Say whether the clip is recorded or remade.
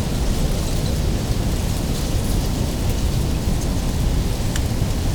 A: recorded